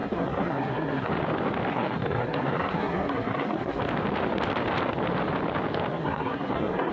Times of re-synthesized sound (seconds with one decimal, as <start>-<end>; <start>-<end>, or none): 0.0-1.1; 1.7-3.8; 5.9-6.9